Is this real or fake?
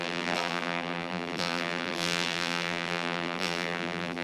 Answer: fake